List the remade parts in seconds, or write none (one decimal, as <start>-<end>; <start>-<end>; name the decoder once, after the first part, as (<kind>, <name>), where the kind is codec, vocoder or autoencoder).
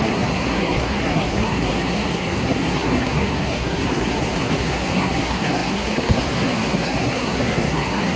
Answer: 0.0-8.2 (codec, SNAC)